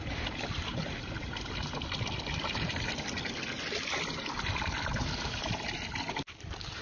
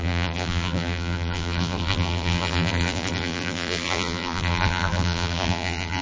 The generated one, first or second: second